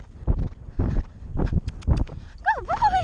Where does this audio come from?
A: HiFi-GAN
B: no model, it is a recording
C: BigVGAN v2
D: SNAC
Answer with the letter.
C